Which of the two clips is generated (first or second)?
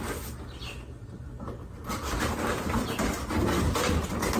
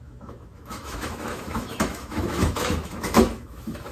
second